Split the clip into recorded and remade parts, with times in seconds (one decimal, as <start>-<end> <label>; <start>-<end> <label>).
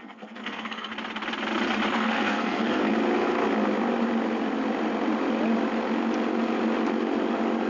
0.0-0.9 remade; 0.9-1.9 recorded; 1.9-2.9 remade; 2.9-7.7 recorded